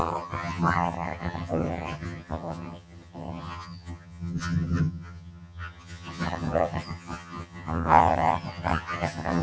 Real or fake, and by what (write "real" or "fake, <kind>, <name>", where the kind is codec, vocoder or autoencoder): fake, vocoder, HiFi-GAN